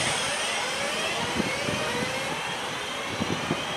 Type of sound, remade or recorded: recorded